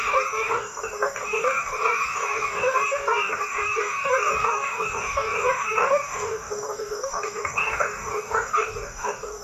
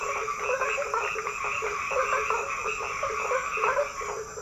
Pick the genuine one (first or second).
second